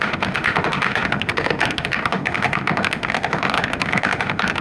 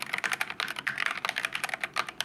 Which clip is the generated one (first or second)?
first